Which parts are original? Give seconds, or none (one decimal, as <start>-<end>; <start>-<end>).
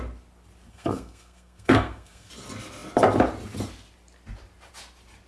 0.0-0.7; 2.3-5.3